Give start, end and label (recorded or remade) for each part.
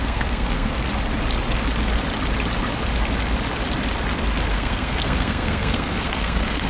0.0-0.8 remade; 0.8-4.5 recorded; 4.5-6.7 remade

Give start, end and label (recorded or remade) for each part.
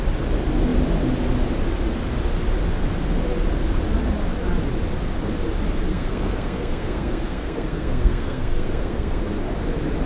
0.0-5.9 recorded; 5.9-9.2 remade; 9.2-10.1 recorded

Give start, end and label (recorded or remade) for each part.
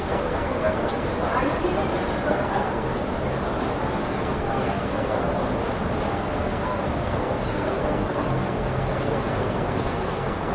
0.0-1.1 remade; 1.1-2.3 recorded; 2.3-2.9 remade; 2.9-4.0 recorded; 4.0-5.3 remade; 5.3-6.1 recorded; 6.1-10.5 remade